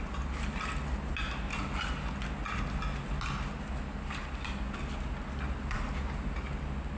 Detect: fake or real real